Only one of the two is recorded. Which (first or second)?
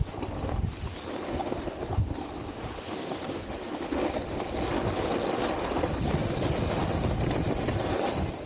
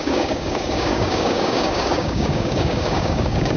first